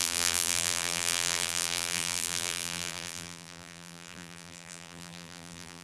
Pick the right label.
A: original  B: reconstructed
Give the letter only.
B